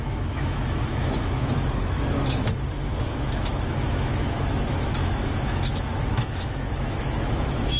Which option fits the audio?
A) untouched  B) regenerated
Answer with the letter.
B